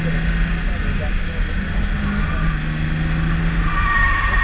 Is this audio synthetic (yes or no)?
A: no